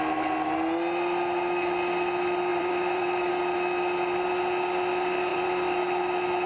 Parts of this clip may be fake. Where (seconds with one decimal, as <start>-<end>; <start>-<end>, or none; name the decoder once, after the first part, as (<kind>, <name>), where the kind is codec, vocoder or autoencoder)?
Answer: 2.5-3.3 (vocoder, BigVGAN v2); 5.3-5.8